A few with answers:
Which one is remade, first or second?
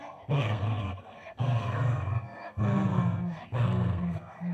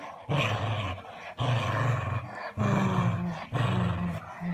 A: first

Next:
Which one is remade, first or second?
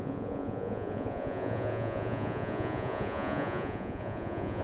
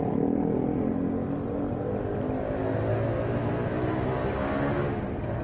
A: first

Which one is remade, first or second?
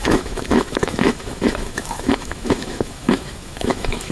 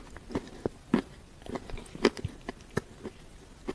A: first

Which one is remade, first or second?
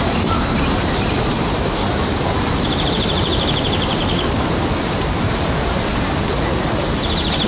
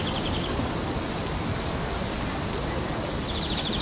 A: first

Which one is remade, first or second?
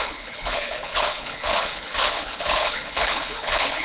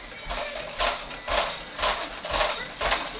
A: first